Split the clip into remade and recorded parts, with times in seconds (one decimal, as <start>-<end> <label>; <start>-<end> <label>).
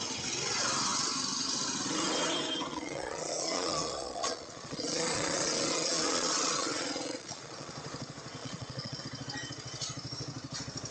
0.0-2.7 recorded; 2.7-7.7 remade; 7.7-8.4 recorded; 8.4-9.0 remade; 9.0-10.9 recorded